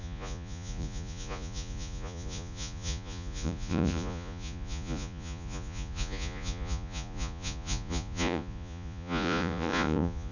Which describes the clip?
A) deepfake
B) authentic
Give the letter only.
A